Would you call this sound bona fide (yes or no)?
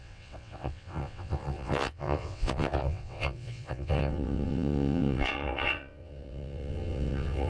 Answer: no